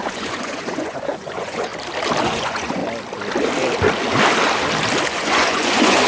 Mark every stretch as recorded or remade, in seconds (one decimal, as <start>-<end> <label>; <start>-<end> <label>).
0.0-1.7 remade; 1.7-2.2 recorded; 2.2-2.8 remade; 2.8-5.1 recorded; 5.1-6.1 remade